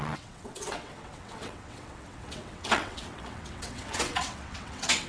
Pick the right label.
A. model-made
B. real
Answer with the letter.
A